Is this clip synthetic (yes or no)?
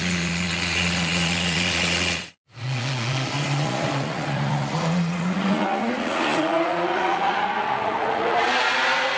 yes